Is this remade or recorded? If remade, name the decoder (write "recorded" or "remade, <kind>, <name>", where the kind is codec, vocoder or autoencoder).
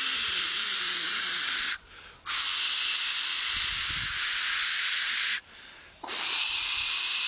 recorded